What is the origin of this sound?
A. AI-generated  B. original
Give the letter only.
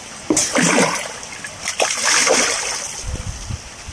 B